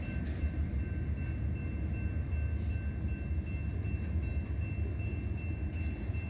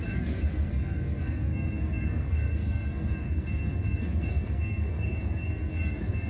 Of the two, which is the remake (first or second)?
second